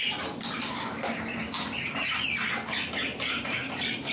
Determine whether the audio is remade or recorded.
recorded